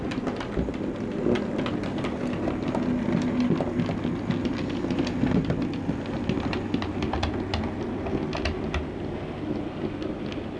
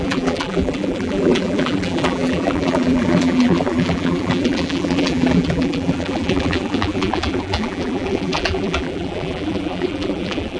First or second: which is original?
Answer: first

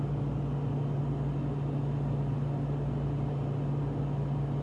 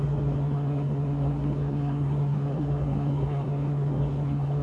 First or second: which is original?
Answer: first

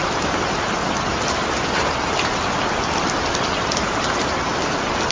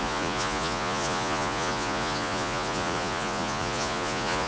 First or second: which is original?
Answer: first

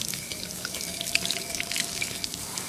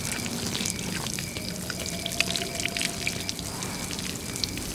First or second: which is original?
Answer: second